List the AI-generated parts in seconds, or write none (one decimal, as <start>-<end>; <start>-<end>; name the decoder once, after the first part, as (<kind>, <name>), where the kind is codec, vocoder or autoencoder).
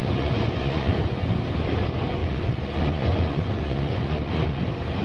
0.0-1.4 (vocoder, Vocos); 2.2-4.6